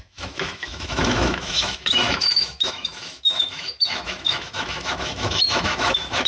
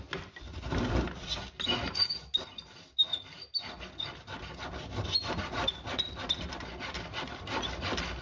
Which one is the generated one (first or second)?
first